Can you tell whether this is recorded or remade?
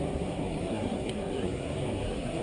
remade